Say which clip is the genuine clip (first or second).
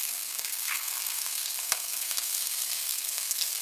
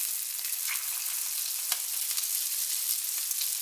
second